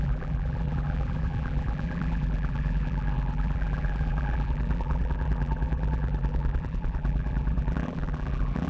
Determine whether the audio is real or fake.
fake